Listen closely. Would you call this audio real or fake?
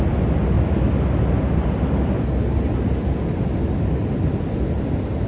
real